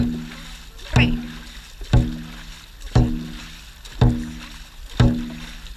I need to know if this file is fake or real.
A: real